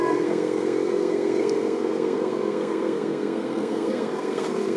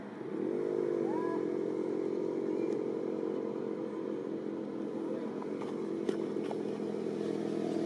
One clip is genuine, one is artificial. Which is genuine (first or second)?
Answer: second